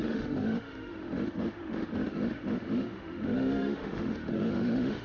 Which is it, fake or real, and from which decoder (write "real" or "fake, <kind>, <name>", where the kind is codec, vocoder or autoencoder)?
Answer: fake, autoencoder, DAC-VAE